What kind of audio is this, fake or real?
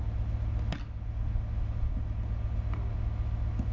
real